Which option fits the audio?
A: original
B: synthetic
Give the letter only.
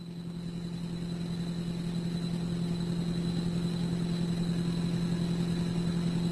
A